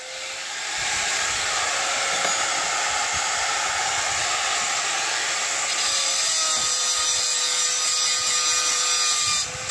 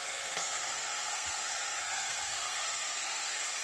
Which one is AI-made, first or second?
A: second